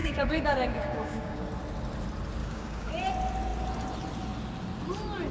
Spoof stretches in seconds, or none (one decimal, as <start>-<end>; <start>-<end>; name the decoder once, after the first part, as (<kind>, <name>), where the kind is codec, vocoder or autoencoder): 0.0-1.5 (codec, DAC); 2.4-2.9